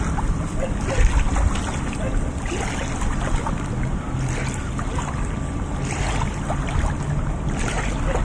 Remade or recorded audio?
recorded